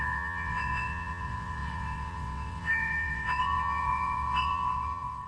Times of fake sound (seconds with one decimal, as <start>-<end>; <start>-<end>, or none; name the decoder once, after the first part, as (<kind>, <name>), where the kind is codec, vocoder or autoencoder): 0.0-5.3 (vocoder, WaveNeXt)